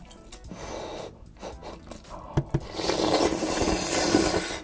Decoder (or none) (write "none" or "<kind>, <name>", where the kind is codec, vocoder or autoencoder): none